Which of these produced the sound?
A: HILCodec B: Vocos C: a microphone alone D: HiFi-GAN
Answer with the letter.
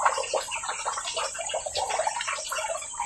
C